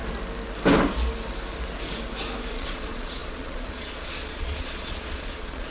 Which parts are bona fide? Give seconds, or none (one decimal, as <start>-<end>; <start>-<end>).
0.0-2.5